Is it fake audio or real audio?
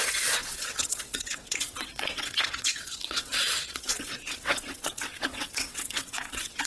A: fake